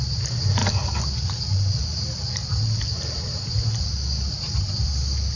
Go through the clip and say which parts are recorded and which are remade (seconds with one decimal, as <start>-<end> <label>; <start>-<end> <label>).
0.0-5.4 recorded